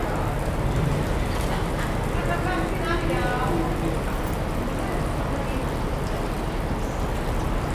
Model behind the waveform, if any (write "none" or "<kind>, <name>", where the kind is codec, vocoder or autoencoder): none